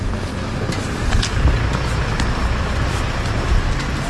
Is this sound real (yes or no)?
yes